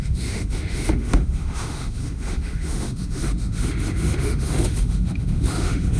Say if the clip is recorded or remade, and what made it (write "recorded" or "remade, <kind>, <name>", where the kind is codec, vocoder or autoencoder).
remade, autoencoder, DAC-VAE